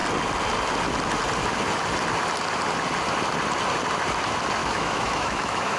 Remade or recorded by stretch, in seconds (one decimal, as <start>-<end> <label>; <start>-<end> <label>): 0.0-4.6 recorded; 4.6-5.8 remade